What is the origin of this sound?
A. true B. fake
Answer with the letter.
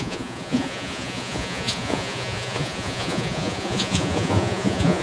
B